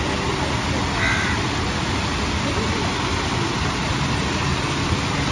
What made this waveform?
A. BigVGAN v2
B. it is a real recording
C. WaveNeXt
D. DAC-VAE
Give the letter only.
B